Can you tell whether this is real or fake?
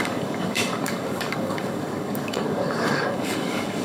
fake